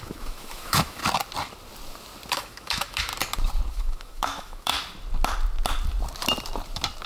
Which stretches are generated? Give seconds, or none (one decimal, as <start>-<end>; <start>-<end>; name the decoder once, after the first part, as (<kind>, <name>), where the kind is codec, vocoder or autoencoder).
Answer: 0.0-1.0 (autoencoder, DAC-VAE); 2.3-3.1; 3.7-4.7